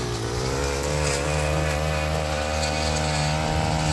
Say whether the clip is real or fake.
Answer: real